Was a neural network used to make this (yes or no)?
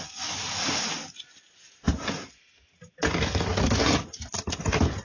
no